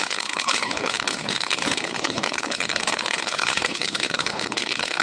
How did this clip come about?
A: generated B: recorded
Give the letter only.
A